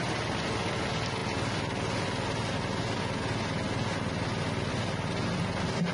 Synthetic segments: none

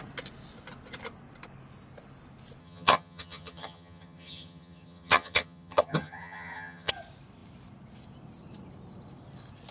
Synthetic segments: 2.6-6.9 (vocoder, HiFi-GAN)